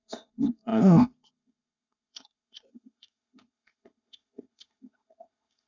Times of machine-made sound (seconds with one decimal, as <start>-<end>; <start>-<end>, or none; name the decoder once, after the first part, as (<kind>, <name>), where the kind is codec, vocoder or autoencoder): 0.0-5.7 (codec, ZipCodec)